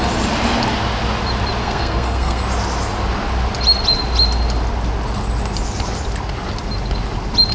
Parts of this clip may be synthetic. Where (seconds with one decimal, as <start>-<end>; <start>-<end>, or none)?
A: 1.6-2.4